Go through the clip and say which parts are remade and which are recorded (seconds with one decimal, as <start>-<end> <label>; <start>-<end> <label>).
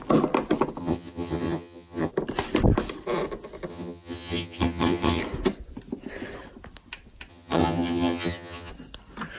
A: 0.0-0.8 recorded; 0.8-2.1 remade; 2.1-3.7 recorded; 3.7-5.2 remade; 5.2-7.3 recorded; 7.3-8.7 remade; 8.7-9.4 recorded